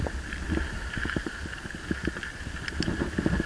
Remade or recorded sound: remade